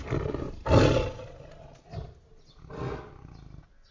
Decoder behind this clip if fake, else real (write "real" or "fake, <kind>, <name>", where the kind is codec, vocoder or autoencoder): real